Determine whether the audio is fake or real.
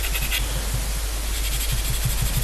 real